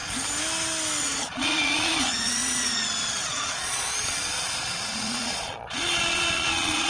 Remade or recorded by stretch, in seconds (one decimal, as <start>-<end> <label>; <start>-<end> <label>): 0.0-1.0 recorded; 1.0-6.9 remade